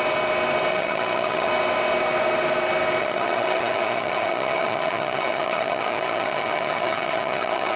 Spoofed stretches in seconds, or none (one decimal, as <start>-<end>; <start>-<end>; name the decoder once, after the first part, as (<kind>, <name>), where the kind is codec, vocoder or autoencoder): 0.7-1.5 (vocoder, HiFi-GAN); 3.0-7.8